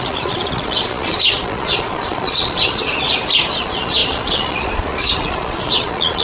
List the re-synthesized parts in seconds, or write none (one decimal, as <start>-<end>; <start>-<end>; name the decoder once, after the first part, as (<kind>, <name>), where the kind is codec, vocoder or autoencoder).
0.0-2.8 (vocoder, Vocos); 3.6-6.2